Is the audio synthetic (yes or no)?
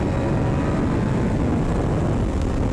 no